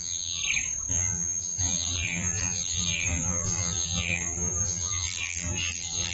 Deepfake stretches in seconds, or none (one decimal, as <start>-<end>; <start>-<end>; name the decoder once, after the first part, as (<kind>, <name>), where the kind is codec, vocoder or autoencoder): 0.0-0.4 (vocoder, BigVGAN v2); 0.9-6.1